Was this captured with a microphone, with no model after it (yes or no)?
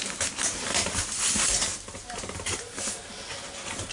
yes